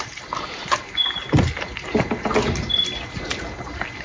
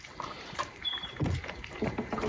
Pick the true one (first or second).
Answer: first